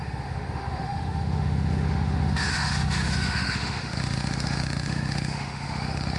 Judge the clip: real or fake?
fake